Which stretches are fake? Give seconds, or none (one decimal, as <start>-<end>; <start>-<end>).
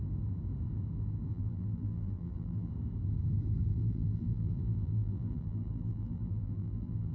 1.3-2.7; 3.7-7.1